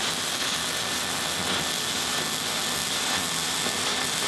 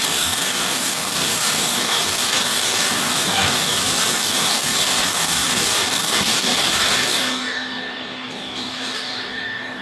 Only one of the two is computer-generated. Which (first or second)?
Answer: second